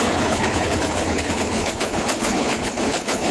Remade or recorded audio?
remade